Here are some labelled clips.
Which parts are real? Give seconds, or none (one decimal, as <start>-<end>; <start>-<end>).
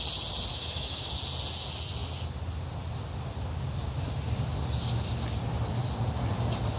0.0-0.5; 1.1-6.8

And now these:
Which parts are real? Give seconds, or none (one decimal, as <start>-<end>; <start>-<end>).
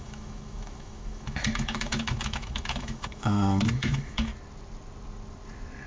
4.3-5.9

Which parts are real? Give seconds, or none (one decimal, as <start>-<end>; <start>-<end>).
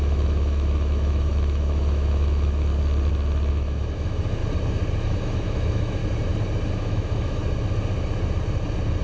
2.7-3.5; 4.4-5.0; 6.0-6.7; 7.4-9.0